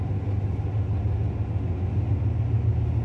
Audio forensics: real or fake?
real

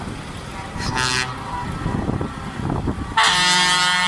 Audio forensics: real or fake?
real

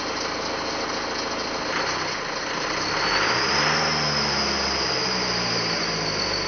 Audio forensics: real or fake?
real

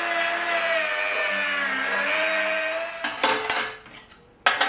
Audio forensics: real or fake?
real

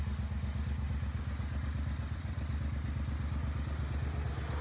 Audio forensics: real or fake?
real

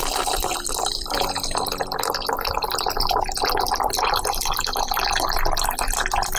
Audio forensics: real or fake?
fake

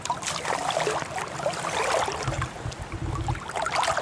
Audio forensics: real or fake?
real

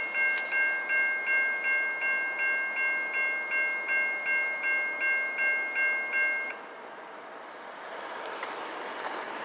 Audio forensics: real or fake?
real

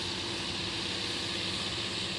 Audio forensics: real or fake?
real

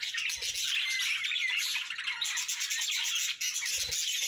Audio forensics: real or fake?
real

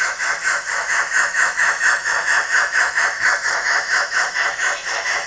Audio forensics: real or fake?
fake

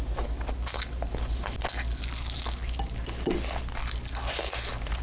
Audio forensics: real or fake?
real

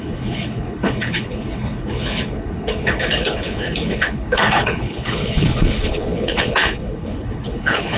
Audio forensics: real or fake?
fake